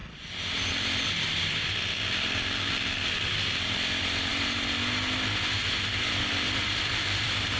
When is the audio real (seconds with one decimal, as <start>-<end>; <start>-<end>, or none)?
4.3-6.1